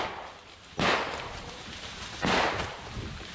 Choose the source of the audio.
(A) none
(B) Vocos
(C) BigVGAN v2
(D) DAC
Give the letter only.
A